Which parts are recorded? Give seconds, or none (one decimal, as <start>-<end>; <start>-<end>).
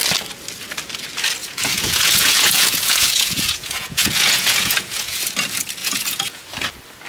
0.0-1.4; 5.2-5.8; 6.4-7.1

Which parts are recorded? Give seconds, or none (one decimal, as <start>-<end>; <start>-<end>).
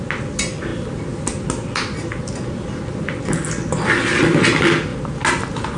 0.0-5.8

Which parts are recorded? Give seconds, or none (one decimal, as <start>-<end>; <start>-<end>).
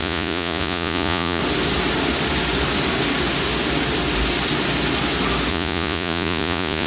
1.4-5.5